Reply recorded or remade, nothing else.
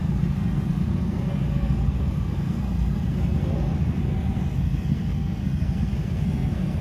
remade